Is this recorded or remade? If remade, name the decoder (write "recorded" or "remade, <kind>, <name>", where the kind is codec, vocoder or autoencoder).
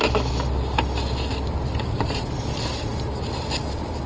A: recorded